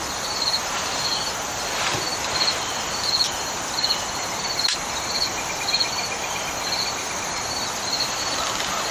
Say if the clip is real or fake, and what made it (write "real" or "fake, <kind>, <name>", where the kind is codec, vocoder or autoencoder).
real